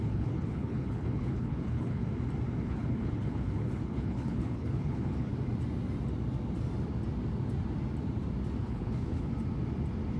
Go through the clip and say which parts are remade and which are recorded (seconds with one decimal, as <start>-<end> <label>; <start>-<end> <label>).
0.0-2.0 remade; 2.0-2.6 recorded; 2.6-5.3 remade; 5.3-8.6 recorded; 8.6-9.3 remade; 9.3-10.2 recorded